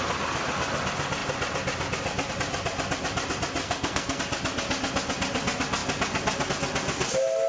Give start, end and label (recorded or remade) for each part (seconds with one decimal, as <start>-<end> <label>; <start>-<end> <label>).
0.0-3.6 recorded; 3.6-4.2 remade; 4.2-7.5 recorded